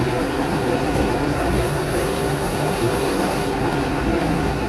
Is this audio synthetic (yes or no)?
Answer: yes